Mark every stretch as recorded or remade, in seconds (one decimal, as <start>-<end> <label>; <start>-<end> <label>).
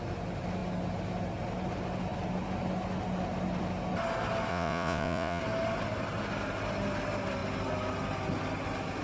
0.0-4.5 recorded; 4.5-5.4 remade; 5.4-9.0 recorded